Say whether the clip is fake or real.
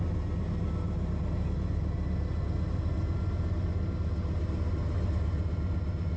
real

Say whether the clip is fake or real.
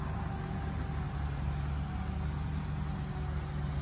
real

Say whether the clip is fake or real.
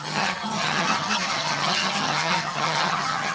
fake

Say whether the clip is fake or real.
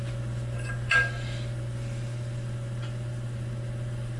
real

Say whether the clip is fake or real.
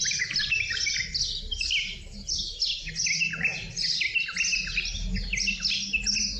real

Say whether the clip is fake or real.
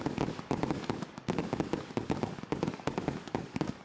fake